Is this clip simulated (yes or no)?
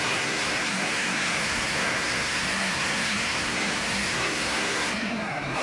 yes